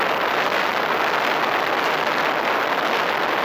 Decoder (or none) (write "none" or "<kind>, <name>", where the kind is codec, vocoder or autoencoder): none